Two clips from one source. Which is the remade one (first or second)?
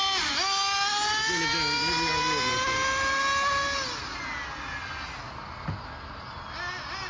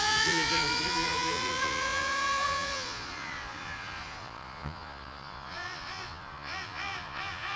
second